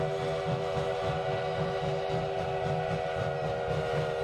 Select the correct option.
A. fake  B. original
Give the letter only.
B